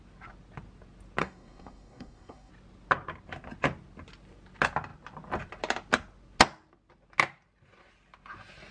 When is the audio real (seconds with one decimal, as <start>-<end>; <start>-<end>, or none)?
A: 0.0-1.2; 2.5-8.7

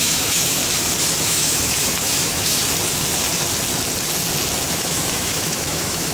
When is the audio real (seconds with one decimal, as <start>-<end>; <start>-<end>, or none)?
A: 0.6-1.2; 2.6-4.7

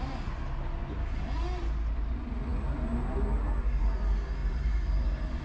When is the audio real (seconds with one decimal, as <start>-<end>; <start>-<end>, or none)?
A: 0.0-4.4

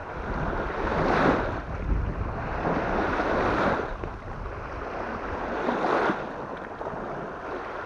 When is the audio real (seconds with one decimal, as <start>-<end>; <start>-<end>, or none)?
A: 0.0-7.9

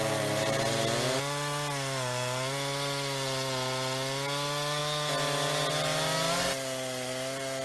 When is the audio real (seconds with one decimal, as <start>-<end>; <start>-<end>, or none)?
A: 0.7-7.6

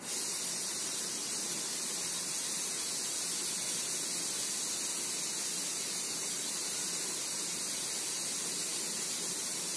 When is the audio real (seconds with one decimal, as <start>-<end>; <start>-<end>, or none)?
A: 0.0-9.8

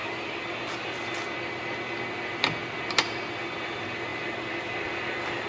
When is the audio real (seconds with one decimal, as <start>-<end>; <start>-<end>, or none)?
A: 0.0-5.5

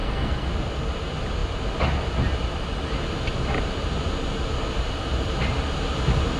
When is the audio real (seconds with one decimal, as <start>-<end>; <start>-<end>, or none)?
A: 0.5-6.4